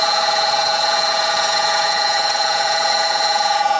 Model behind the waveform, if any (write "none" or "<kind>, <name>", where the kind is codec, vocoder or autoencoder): vocoder, Vocos